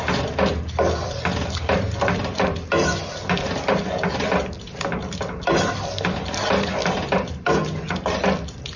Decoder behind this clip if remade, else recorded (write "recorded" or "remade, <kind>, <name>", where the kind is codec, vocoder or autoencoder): recorded